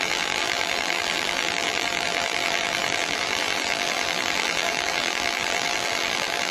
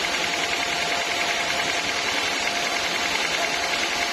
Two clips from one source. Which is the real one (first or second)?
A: second